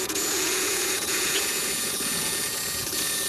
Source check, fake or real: fake